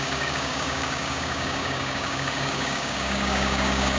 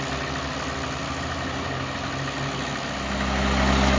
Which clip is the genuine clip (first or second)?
second